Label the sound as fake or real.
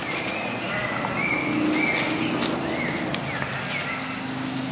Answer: real